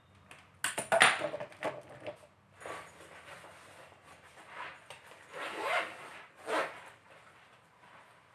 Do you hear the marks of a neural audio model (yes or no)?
no